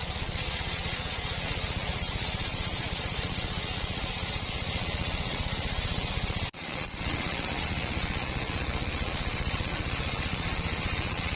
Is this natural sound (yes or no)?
no